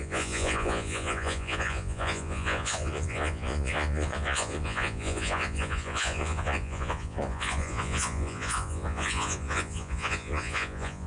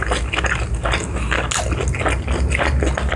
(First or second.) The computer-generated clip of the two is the first